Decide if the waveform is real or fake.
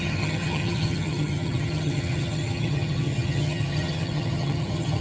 fake